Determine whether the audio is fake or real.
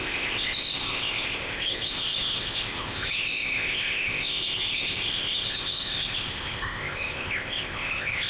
fake